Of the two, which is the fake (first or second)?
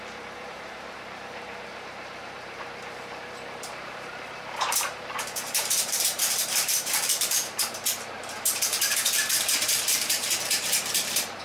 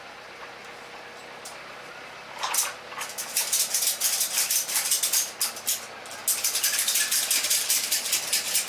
first